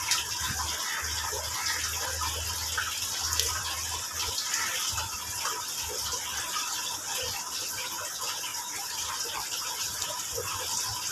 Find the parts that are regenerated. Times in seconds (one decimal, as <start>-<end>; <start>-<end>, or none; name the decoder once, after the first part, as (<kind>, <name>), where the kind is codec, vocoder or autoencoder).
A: 8.5-10.6 (vocoder, BigVGAN v2)